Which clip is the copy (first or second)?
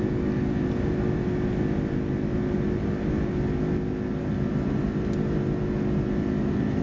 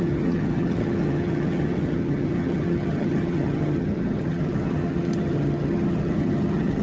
second